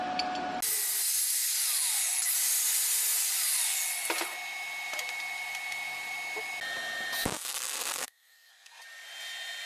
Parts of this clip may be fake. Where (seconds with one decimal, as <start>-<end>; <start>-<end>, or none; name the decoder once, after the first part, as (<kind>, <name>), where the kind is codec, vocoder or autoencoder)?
7.4-8.8 (codec, SNAC)